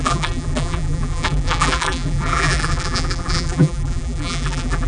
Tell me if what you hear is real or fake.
fake